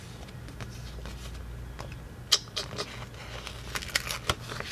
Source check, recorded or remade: recorded